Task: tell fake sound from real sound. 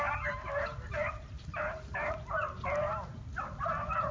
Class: real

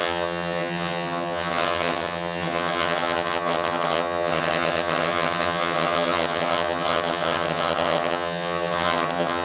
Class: fake